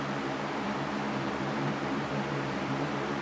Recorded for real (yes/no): no